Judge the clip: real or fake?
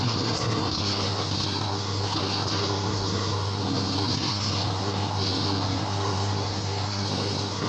fake